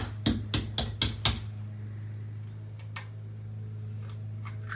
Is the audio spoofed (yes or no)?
no